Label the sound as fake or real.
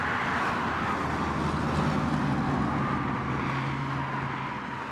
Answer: real